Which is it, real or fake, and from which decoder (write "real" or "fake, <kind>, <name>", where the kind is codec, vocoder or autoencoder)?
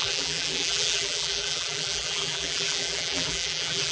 fake, vocoder, BigVGAN v2